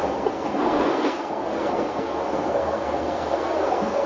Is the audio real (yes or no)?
no